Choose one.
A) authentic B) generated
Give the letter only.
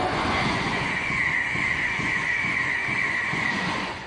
B